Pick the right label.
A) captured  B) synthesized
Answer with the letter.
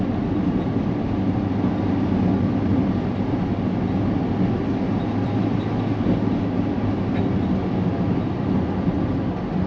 A